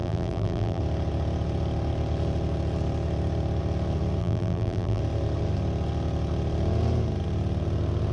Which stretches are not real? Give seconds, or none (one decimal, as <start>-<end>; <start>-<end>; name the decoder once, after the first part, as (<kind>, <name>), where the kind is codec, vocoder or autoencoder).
0.0-0.8 (vocoder, BigVGAN v2); 4.2-5.0